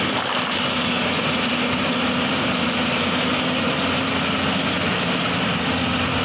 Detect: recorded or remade recorded